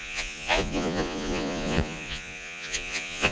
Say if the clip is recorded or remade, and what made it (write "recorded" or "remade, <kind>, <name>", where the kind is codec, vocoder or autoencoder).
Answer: remade, vocoder, Vocos